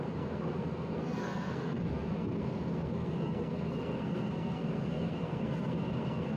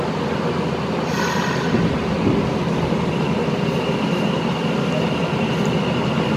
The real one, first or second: second